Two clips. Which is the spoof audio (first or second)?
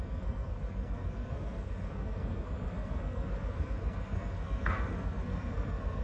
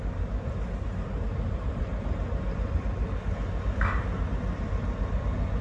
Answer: first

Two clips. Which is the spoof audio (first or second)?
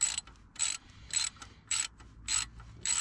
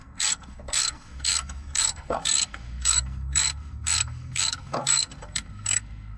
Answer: second